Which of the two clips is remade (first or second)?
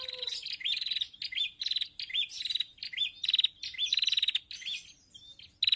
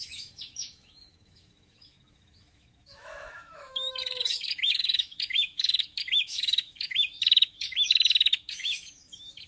second